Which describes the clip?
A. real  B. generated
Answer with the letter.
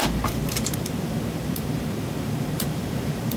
B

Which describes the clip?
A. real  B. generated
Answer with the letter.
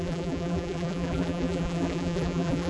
B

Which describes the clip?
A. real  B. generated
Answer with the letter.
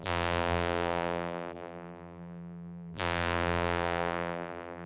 B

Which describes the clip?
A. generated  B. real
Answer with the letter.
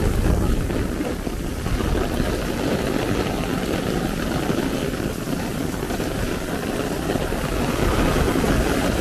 B